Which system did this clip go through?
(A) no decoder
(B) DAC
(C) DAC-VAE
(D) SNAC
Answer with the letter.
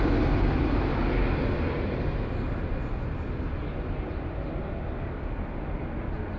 A